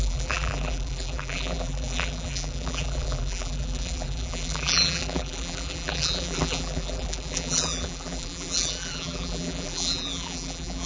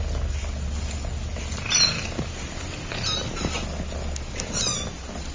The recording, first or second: second